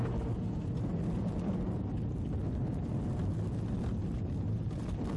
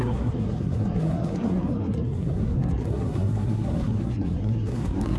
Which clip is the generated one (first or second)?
second